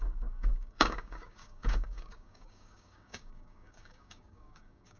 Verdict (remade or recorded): remade